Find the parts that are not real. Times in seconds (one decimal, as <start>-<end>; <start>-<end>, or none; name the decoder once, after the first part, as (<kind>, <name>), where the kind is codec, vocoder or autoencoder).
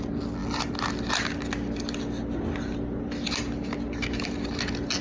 none